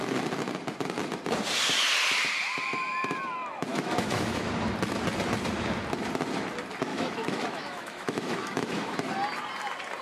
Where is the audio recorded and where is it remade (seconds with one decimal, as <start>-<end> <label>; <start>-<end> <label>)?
0.0-3.7 recorded; 3.7-4.5 remade; 4.5-6.9 recorded; 6.9-9.1 remade; 9.1-10.0 recorded